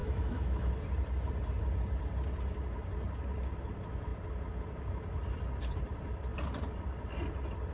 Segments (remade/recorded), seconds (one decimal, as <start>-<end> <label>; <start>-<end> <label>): 0.0-0.7 remade; 0.7-7.7 recorded

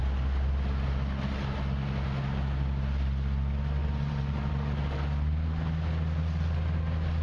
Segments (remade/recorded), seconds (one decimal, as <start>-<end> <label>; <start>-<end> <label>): 0.0-3.8 recorded; 3.8-4.5 remade; 4.5-7.2 recorded

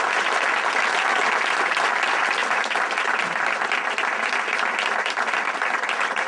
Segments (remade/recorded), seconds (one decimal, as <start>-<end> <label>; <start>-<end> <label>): 0.0-6.3 recorded

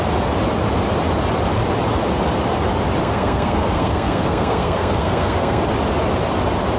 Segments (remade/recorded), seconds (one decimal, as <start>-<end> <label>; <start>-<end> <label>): 0.0-3.0 recorded; 3.0-5.6 remade; 5.6-6.8 recorded

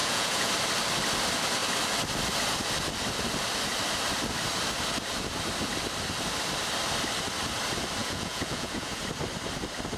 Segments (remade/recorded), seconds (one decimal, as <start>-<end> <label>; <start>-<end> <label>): 0.0-0.5 remade; 0.5-8.0 recorded; 8.0-9.0 remade; 9.0-10.0 recorded

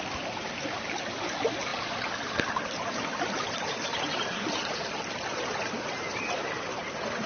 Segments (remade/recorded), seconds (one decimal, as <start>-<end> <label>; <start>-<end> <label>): 0.0-7.3 recorded